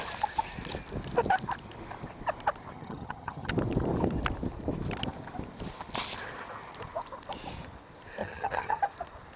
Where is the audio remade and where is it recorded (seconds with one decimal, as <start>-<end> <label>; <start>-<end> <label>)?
0.0-2.7 recorded; 2.7-3.5 remade; 3.5-8.2 recorded; 8.2-8.8 remade; 8.8-9.4 recorded